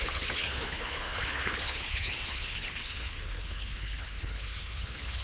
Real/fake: fake